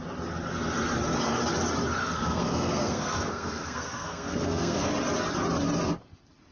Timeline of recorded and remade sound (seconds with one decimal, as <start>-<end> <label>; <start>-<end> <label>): 0.0-2.0 recorded; 2.0-4.9 remade; 4.9-6.5 recorded